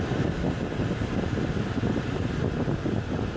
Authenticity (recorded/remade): recorded